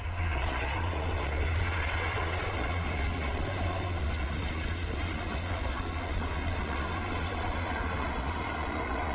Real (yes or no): no